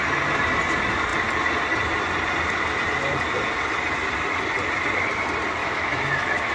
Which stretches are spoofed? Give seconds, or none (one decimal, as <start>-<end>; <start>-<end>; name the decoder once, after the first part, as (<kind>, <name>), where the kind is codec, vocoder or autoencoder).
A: 5.6-6.5 (autoencoder, DAC-VAE)